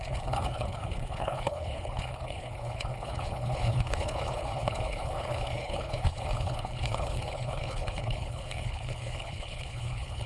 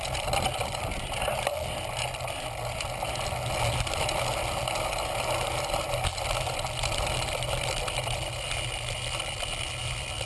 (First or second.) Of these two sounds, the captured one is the second